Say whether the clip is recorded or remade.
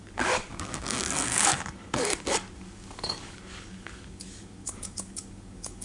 remade